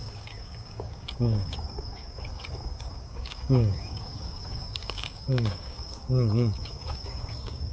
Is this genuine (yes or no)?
no